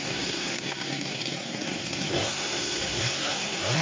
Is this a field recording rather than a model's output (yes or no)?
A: no